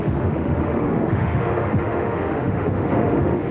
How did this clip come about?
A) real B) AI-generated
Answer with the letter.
B